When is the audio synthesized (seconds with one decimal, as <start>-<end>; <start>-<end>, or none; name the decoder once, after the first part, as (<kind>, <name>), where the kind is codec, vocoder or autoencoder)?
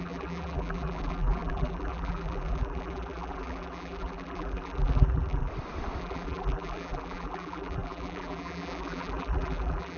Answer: 0.0-5.5 (vocoder, BigVGAN v2); 6.0-10.0